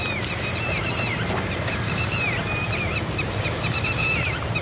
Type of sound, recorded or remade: remade